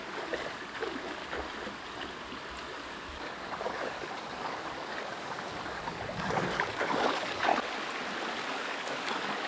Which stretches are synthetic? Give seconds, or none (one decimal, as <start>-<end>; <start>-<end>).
0.0-1.2; 2.6-7.5; 8.5-9.5